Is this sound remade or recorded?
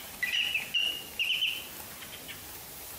recorded